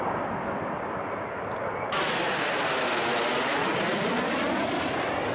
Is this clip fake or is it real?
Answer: real